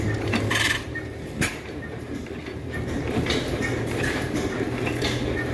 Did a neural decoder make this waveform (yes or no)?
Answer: yes